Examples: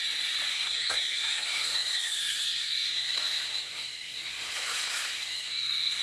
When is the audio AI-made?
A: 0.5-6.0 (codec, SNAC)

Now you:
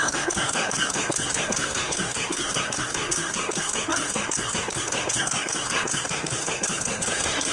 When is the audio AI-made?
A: 0.0-7.5 (codec, SNAC)

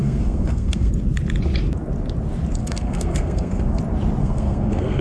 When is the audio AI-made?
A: 0.0-0.9 (codec, SNAC); 2.6-3.8; 4.2-5.0

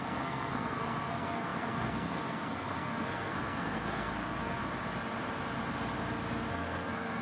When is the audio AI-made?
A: 0.0-4.6 (codec, SNAC); 6.5-7.2

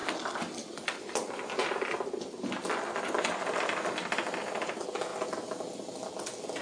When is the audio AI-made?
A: none

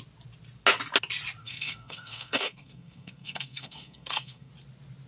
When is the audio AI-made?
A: 1.4-4.5 (codec, SNAC)

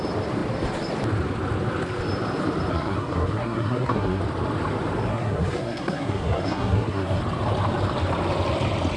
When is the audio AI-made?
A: 2.7-4.2 (codec, SNAC); 5.1-7.2

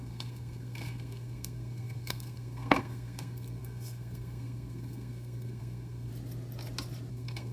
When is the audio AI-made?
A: 0.0-6.1 (codec, SNAC); 7.1-7.5